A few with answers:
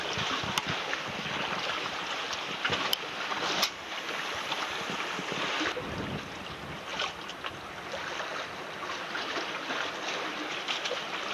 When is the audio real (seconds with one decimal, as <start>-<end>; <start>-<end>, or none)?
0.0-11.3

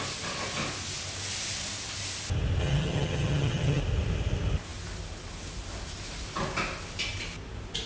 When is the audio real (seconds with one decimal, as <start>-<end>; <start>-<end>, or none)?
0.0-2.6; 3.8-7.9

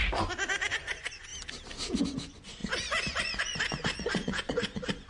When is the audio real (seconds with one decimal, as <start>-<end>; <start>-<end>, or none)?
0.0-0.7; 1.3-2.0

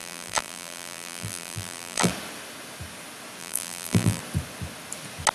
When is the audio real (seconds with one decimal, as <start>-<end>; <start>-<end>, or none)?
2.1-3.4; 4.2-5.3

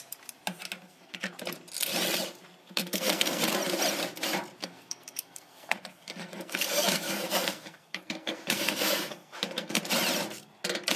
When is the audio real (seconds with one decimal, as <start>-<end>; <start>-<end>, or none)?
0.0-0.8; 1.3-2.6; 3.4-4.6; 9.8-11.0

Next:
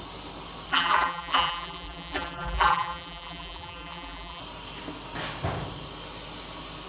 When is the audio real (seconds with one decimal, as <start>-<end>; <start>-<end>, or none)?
0.0-0.7; 4.4-6.9

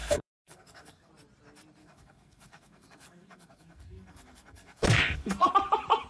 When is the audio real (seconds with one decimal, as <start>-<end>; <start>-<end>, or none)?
1.1-1.8; 5.5-6.1